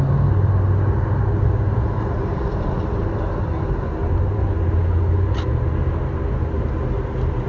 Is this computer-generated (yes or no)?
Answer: no